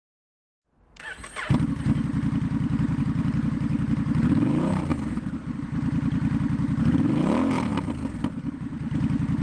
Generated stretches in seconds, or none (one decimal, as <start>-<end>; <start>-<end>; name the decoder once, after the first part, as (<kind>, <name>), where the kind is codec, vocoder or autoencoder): none